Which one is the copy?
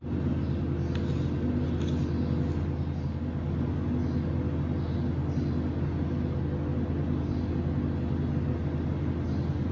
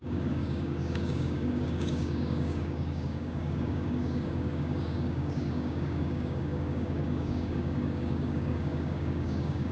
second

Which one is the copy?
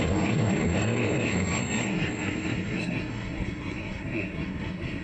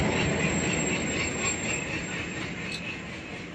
first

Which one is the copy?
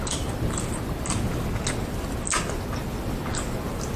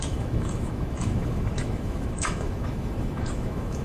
second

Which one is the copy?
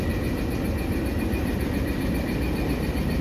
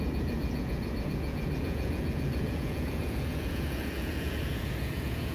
second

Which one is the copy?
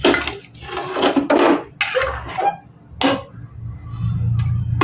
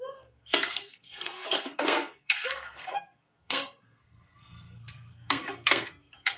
second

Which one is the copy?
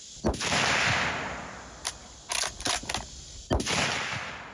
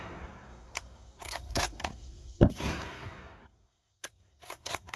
second